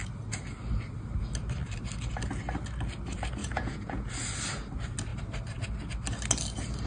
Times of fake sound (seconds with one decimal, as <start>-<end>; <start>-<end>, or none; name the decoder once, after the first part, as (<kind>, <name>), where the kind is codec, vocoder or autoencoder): 3.4-4.1 (vocoder, Vocos)